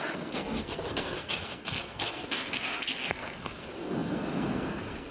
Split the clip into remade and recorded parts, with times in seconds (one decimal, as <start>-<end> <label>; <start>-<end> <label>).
0.0-5.1 remade